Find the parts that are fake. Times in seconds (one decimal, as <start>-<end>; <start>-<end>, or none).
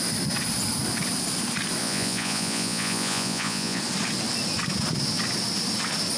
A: 1.8-3.8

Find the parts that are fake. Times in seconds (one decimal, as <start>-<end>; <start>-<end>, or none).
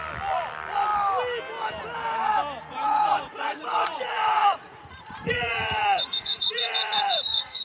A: 2.7-7.6